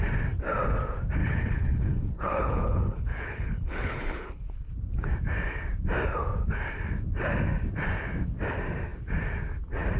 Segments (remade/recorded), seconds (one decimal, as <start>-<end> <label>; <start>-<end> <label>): 0.0-1.2 recorded; 1.2-4.7 remade; 4.7-10.0 recorded